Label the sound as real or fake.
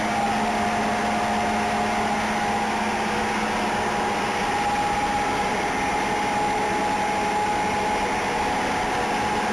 real